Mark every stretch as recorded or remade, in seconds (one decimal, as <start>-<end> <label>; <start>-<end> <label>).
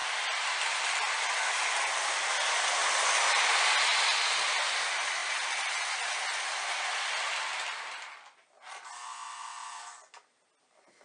0.0-11.0 recorded